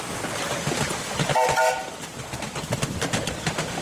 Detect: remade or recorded recorded